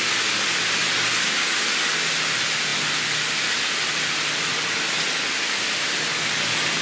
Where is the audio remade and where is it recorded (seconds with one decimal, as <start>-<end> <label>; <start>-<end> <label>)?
0.0-6.8 recorded